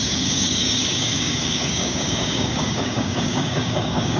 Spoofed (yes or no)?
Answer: yes